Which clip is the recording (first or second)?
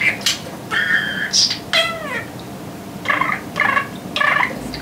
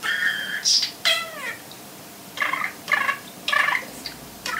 first